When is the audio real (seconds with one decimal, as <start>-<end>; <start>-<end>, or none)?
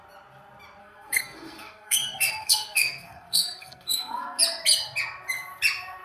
0.0-0.8; 4.4-6.0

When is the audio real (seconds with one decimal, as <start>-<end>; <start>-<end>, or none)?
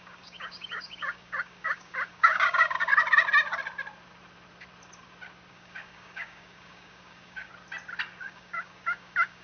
2.9-5.5; 7.5-8.2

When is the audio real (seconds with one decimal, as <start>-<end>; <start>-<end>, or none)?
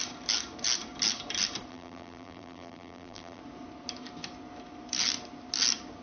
0.0-1.7; 3.4-6.0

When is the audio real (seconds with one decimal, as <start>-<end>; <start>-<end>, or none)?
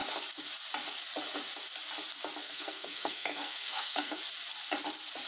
0.0-2.4; 4.2-5.3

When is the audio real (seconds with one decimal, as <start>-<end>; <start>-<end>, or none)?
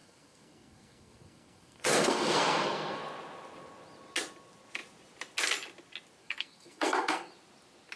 3.0-6.2; 7.3-8.0